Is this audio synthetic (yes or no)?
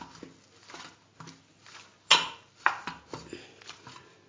no